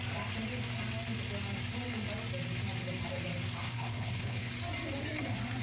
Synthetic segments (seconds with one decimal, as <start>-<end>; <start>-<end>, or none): 3.6-4.5